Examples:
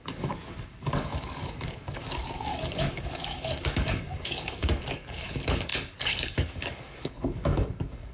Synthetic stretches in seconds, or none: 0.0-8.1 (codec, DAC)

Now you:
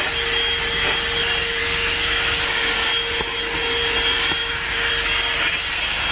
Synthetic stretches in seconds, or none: 1.6-2.9 (codec, DAC); 4.4-4.9

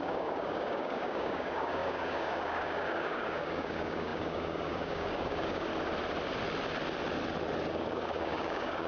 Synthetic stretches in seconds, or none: 0.0-5.7 (codec, DAC); 7.7-8.9

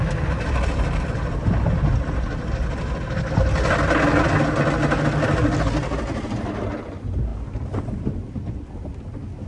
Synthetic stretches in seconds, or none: none